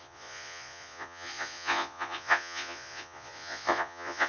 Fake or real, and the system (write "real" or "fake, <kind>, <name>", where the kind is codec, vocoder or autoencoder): fake, vocoder, Vocos